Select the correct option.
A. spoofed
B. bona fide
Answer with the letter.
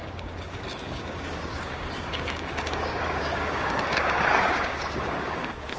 A